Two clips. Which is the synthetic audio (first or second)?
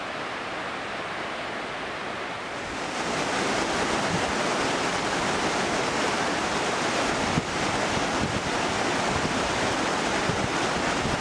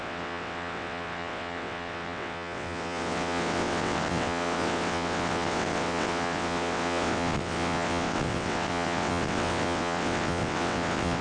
second